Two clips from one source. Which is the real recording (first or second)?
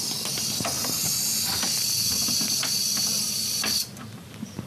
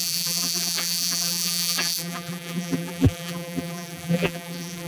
first